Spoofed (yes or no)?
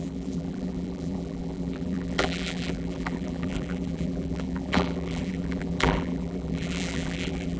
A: yes